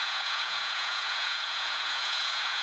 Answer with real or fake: fake